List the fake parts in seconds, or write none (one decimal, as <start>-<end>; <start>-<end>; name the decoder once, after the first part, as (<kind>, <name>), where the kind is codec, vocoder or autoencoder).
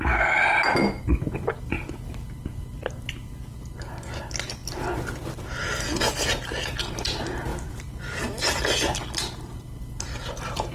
7.5-8.2 (vocoder, BigVGAN v2)